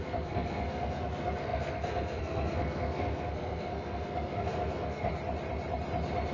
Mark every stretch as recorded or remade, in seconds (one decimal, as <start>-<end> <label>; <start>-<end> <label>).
0.0-5.1 remade; 5.1-6.3 recorded